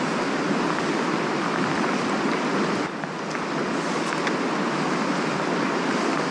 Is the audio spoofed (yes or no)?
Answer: no